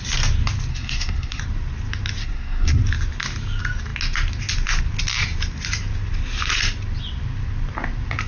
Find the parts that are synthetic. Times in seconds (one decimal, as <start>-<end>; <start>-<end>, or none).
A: 0.7-1.4; 2.2-2.8